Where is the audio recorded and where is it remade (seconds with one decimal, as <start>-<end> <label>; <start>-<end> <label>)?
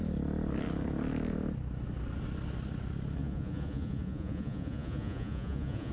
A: 0.0-3.2 recorded; 3.2-5.9 remade